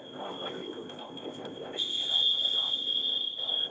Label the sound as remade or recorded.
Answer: remade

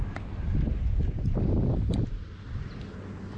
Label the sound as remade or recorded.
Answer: recorded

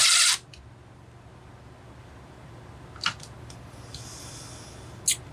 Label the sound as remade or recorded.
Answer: recorded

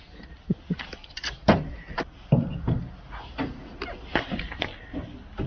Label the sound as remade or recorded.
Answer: recorded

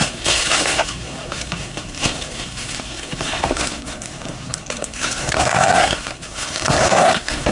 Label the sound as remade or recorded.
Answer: remade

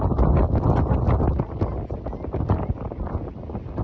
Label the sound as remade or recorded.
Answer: recorded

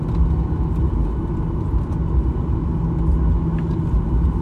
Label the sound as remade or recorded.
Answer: recorded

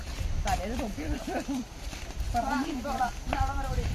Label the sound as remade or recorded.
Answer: recorded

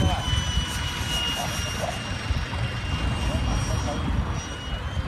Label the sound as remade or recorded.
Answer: recorded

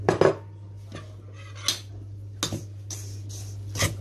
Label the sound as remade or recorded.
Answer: recorded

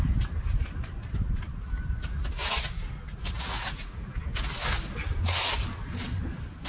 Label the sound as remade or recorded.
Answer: recorded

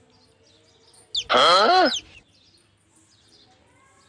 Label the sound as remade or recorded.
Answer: recorded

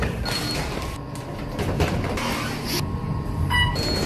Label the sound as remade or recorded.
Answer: recorded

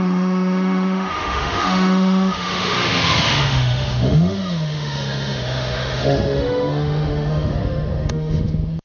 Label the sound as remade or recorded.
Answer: remade